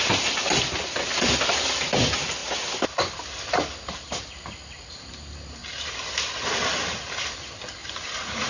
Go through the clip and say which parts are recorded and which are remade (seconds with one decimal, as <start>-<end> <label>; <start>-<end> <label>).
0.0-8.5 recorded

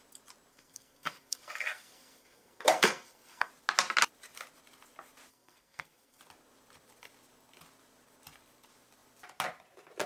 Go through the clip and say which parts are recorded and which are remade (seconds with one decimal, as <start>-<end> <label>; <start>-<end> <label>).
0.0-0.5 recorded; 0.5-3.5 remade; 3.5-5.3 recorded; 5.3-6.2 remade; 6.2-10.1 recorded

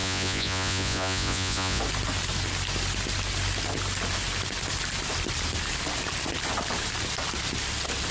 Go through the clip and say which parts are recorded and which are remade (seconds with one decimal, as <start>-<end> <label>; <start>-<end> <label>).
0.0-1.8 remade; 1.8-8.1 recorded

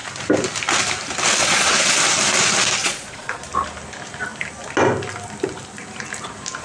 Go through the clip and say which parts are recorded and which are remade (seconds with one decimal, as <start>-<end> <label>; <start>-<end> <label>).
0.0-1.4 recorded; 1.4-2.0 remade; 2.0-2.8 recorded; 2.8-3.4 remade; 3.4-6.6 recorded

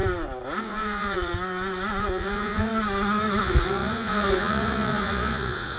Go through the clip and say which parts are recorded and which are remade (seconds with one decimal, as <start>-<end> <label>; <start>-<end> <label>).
0.0-0.6 recorded; 0.6-1.3 remade; 1.3-2.0 recorded; 2.0-2.7 remade; 2.7-3.4 recorded; 3.4-5.8 remade

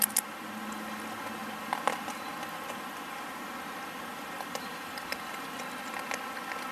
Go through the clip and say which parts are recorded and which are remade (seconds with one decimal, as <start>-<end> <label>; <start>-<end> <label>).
0.0-6.7 recorded

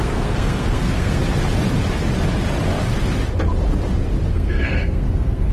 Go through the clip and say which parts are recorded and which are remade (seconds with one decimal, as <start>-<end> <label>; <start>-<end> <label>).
0.0-1.2 remade; 1.2-4.3 recorded; 4.3-5.5 remade

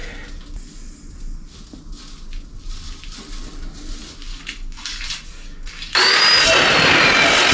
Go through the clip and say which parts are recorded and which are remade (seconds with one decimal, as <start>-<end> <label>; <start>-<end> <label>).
0.0-4.3 recorded; 4.3-6.2 remade; 6.2-7.5 recorded